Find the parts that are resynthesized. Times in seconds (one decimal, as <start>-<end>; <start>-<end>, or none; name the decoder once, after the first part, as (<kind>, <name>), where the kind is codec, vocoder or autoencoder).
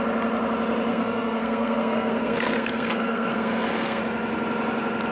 0.9-4.0 (codec, SNAC)